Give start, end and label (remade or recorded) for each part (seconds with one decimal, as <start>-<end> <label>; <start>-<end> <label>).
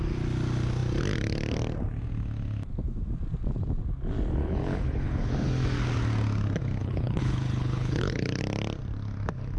0.0-4.4 recorded; 4.4-5.3 remade; 5.3-6.8 recorded; 6.8-8.4 remade; 8.4-9.6 recorded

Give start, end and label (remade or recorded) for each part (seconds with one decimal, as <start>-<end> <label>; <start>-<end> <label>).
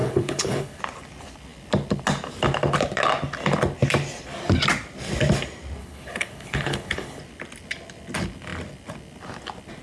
0.0-0.8 remade; 0.8-5.8 recorded; 5.8-7.2 remade; 7.2-9.8 recorded